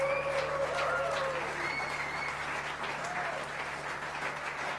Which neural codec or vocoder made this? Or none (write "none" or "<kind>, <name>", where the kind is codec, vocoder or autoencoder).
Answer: none